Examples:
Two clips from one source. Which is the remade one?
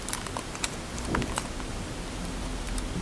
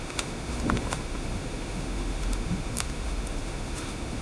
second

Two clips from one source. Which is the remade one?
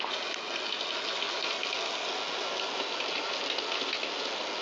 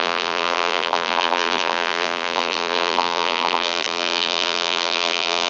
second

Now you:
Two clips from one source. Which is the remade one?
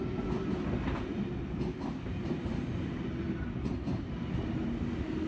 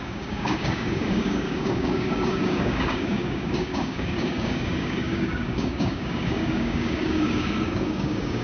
second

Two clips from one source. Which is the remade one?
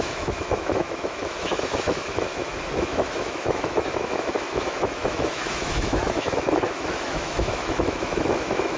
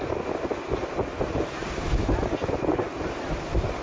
first